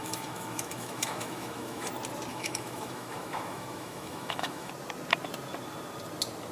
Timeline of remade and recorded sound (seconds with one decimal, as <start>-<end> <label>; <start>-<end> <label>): 0.0-1.9 remade; 1.9-2.3 recorded; 2.3-4.7 remade; 4.7-6.5 recorded